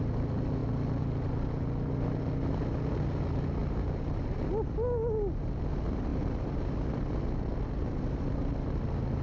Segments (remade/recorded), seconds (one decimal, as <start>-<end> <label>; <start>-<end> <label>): 0.0-9.2 recorded

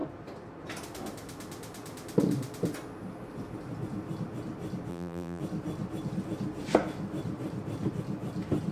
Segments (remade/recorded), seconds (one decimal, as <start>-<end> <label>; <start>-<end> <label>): 0.0-4.9 recorded; 4.9-5.4 remade; 5.4-8.7 recorded

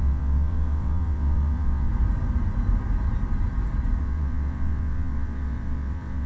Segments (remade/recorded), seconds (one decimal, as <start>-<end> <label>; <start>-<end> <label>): 0.0-1.9 remade; 1.9-4.0 recorded; 4.0-6.3 remade

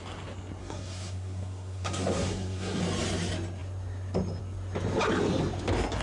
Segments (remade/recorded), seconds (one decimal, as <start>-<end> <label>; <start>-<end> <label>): 0.0-0.6 recorded; 0.6-2.8 remade; 2.8-6.0 recorded

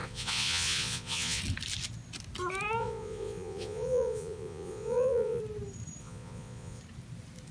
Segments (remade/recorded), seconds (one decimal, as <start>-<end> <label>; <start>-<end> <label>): 0.0-1.4 remade; 1.4-2.8 recorded; 2.8-5.4 remade; 5.4-6.0 recorded; 6.0-6.8 remade; 6.8-7.5 recorded